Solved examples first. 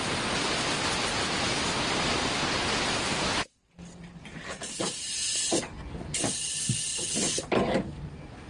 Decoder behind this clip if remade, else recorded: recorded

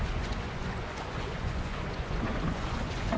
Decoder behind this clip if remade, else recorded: remade, vocoder, Vocos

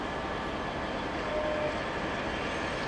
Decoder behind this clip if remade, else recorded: recorded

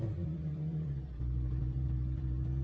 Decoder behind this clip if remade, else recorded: remade, vocoder, BigVGAN v2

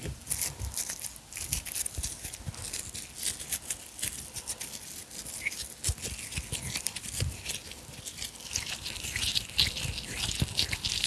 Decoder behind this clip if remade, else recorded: recorded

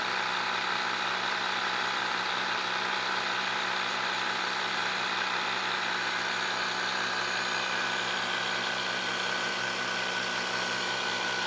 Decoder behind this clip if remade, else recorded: recorded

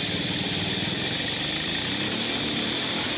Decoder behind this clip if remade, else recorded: recorded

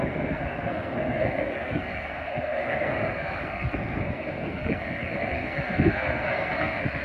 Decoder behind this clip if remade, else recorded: remade, codec, SNAC